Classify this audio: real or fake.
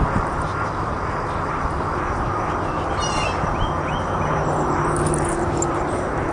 real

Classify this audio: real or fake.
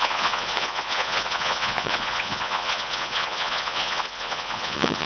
fake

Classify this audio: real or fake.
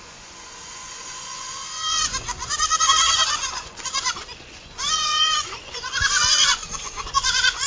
fake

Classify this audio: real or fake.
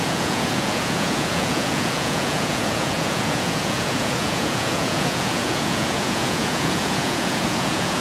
fake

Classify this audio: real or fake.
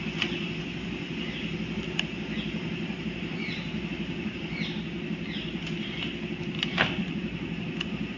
real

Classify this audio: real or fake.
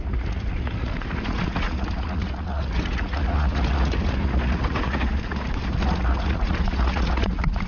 fake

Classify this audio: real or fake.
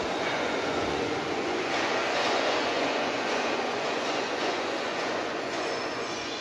fake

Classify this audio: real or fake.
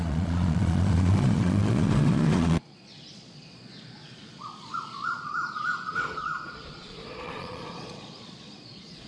fake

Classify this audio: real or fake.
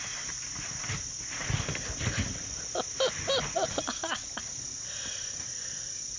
real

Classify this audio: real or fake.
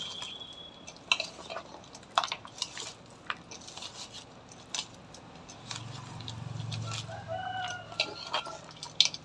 real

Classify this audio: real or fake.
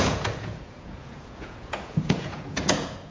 fake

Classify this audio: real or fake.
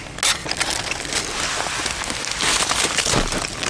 real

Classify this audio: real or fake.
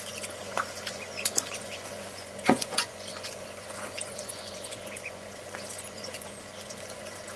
fake